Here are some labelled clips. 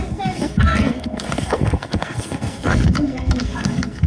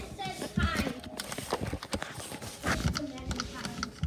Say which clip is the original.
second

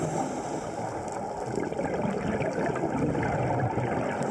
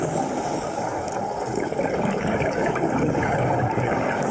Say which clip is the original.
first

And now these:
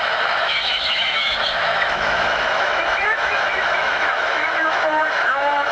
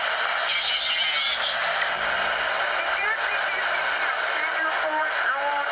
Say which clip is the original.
second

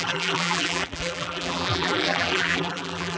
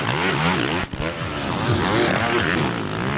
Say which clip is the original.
second